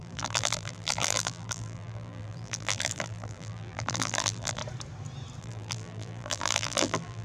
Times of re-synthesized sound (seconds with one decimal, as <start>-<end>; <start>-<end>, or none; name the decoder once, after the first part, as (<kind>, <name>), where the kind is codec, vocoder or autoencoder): 0.0-4.6 (vocoder, BigVGAN v2); 5.4-7.2